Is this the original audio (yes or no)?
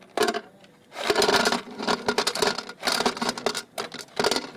yes